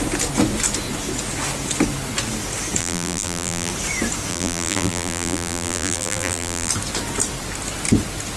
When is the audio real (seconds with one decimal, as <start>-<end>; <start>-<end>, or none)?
0.0-2.8; 3.7-4.3; 6.7-8.4